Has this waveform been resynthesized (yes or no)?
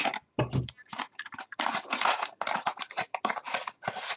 no